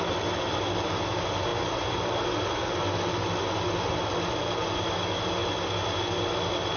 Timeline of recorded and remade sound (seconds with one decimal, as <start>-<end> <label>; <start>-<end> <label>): 0.0-6.8 recorded